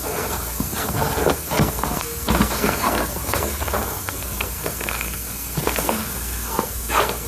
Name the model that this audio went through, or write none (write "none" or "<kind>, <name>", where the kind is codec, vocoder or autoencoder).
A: codec, SNAC